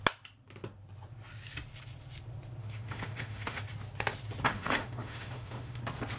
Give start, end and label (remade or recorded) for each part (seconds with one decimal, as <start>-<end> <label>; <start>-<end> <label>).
0.0-2.6 recorded; 2.6-3.6 remade; 3.6-4.5 recorded; 4.5-5.8 remade; 5.8-6.2 recorded